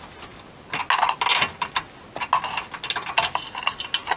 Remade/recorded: recorded